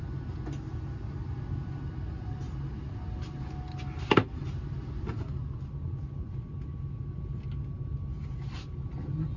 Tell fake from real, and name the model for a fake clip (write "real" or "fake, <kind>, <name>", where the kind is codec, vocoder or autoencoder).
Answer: real